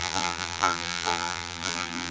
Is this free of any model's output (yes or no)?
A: no